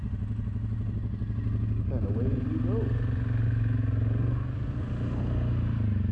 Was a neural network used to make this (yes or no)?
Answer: no